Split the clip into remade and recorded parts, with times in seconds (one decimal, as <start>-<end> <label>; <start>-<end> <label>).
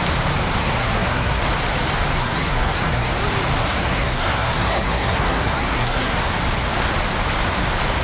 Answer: 0.0-0.6 recorded; 0.6-1.4 remade; 1.4-2.2 recorded; 2.2-3.1 remade; 3.1-3.6 recorded; 3.6-6.3 remade; 6.3-8.0 recorded